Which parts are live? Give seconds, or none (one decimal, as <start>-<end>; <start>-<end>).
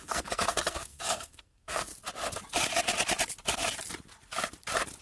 1.9-5.0